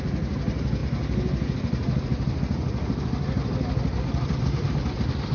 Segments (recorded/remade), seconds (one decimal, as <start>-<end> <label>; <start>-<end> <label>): 0.0-5.3 recorded